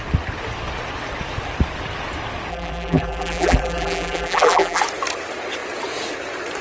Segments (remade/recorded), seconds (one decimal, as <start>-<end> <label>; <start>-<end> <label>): 0.0-2.5 recorded; 2.5-4.8 remade; 4.8-6.6 recorded